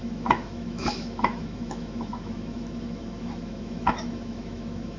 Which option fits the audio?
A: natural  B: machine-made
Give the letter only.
B